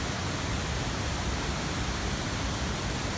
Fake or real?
real